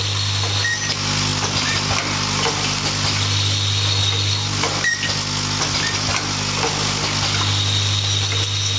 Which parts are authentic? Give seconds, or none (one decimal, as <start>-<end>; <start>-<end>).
0.0-8.8